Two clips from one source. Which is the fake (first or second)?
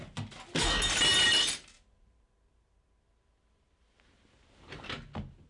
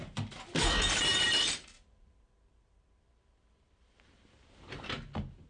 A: second